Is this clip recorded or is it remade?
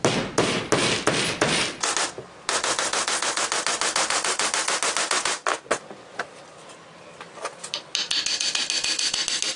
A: recorded